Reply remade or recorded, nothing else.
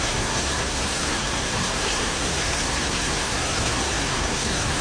remade